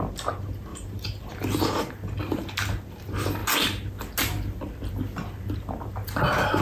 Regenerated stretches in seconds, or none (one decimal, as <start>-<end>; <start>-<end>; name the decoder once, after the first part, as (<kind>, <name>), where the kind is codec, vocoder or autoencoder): 0.7-1.3 (vocoder, BigVGAN v2)